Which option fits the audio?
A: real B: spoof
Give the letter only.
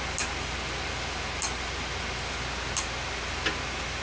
A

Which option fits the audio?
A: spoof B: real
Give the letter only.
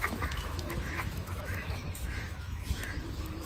A